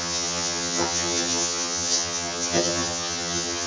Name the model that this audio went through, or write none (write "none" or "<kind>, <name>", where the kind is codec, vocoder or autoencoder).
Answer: vocoder, HiFi-GAN